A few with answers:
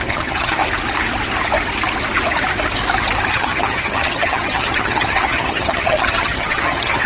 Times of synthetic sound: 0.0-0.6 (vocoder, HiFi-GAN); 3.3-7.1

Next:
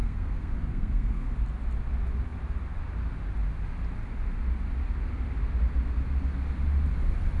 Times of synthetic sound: 0.0-1.3 (codec, SNAC)